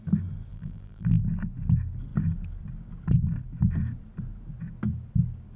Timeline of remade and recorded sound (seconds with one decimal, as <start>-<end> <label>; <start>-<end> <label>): 0.0-0.5 recorded; 0.5-1.2 remade; 1.2-5.6 recorded